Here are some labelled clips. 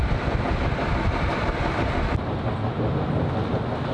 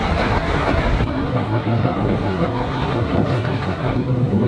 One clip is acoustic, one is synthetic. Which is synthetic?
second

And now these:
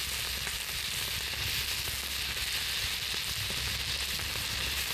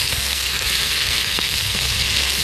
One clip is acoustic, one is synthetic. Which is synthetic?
second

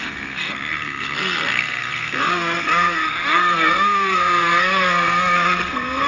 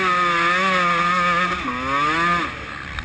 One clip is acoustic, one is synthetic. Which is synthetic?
first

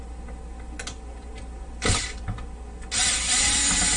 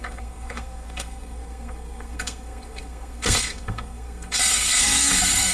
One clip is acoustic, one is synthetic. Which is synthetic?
second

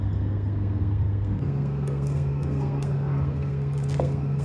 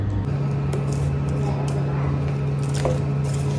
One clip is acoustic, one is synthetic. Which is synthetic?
first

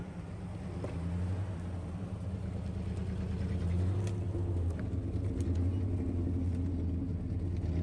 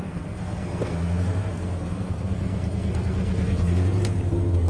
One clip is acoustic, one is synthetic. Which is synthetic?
second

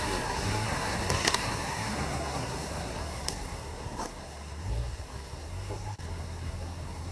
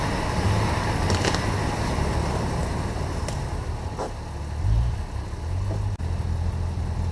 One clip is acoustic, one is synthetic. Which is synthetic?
first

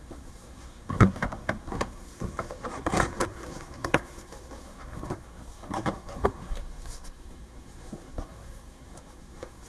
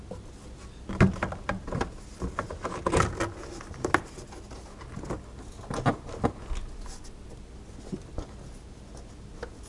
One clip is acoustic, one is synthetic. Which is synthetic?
first